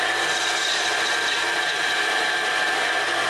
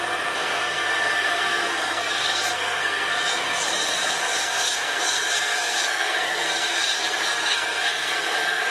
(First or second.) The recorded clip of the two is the first